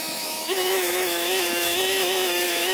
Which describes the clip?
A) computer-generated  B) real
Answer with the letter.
A